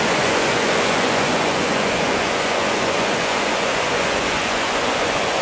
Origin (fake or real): fake